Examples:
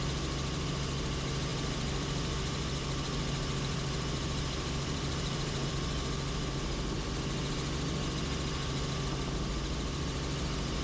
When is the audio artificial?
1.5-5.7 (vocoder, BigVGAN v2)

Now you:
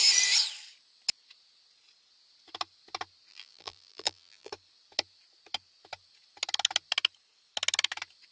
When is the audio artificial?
3.3-4.5 (vocoder, BigVGAN v2)